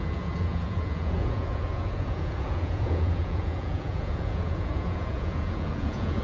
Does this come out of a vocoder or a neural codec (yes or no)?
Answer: yes